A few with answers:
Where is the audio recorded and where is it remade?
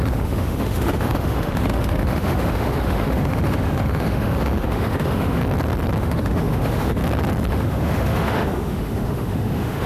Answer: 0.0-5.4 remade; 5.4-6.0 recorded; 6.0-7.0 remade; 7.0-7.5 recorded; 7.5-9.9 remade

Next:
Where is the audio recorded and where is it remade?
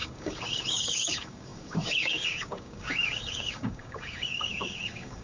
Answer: 0.0-5.2 remade